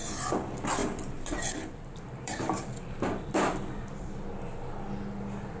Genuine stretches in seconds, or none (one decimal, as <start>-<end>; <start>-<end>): 0.0-0.8; 4.2-5.6